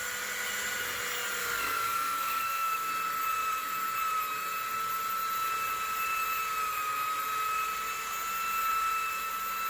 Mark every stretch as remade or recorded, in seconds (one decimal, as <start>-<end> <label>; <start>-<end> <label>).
0.0-1.4 recorded; 1.4-2.9 remade; 2.9-9.7 recorded